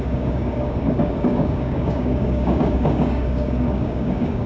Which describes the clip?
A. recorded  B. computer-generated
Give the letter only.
B